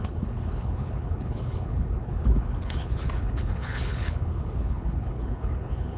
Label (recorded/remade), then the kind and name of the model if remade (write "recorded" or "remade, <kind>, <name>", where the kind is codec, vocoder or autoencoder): remade, codec, HILCodec